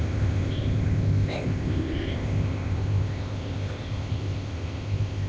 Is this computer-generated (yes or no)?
yes